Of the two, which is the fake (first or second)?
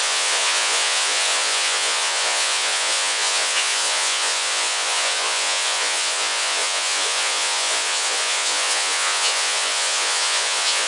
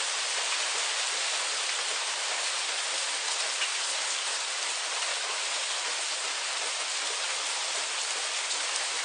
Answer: first